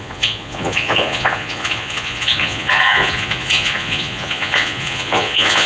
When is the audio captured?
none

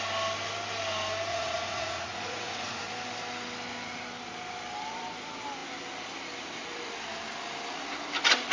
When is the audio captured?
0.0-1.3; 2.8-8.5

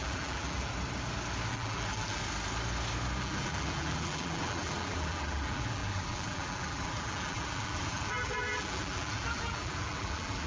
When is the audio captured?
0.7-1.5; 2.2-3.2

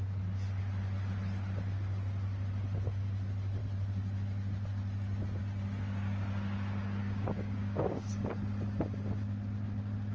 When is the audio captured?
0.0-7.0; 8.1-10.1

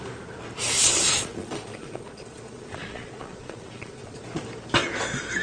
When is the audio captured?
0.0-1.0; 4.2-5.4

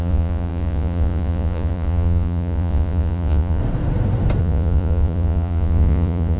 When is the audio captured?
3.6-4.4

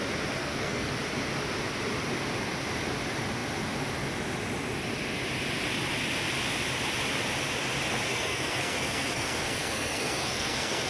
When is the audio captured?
0.0-0.4; 0.9-8.1